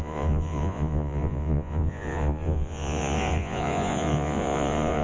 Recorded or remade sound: remade